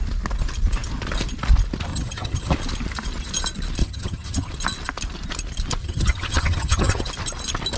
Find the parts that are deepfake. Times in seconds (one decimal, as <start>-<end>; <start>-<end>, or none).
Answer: 1.9-2.5; 3.8-4.5; 5.8-7.1